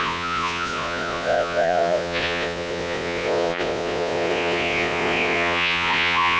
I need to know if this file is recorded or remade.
remade